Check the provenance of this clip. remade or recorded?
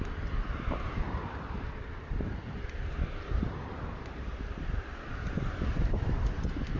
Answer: remade